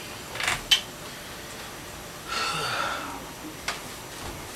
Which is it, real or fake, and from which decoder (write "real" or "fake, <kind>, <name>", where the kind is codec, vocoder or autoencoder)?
real